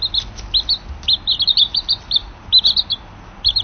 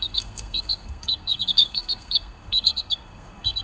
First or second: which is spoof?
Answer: second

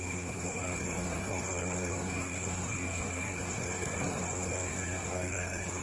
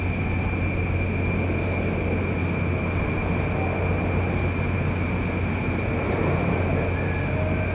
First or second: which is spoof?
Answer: first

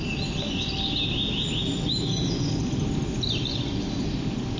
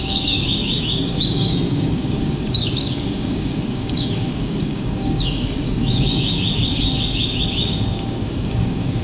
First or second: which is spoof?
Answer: second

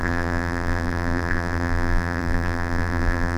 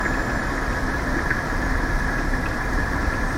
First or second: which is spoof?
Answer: first